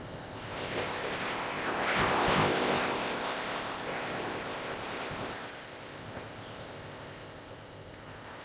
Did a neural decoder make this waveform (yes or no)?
yes